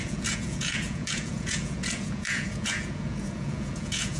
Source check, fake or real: fake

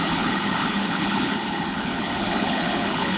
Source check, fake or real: fake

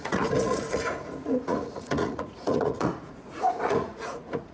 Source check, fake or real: fake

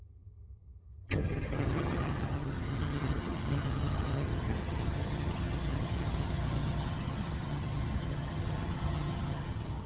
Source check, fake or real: fake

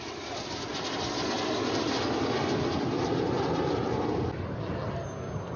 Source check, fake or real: real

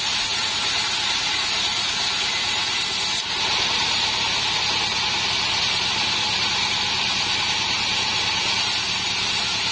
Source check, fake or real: real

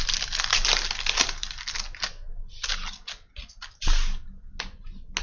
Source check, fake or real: real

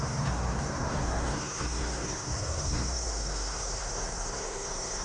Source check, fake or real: fake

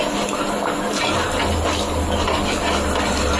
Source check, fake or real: real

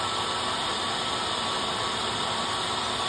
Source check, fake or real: real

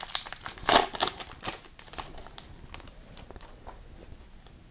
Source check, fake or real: real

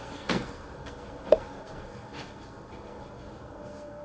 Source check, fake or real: fake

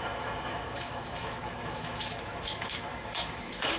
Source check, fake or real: fake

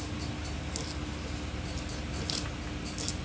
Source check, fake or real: real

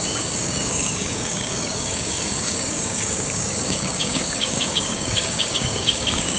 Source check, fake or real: fake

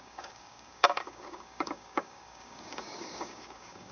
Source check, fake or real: fake